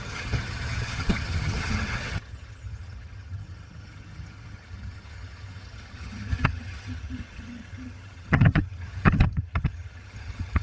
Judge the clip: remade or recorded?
remade